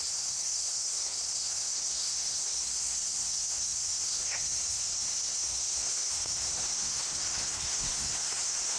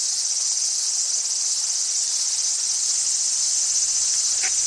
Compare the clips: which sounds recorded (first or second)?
second